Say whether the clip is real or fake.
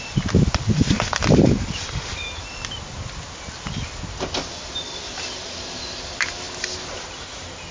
real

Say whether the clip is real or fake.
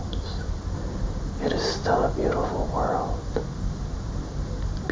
fake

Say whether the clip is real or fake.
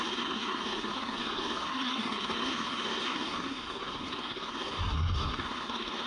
fake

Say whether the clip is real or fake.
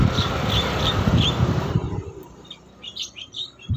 fake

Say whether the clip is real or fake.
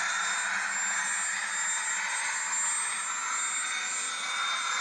real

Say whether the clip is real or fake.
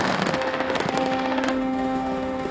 fake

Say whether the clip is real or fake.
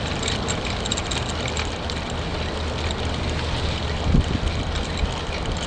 real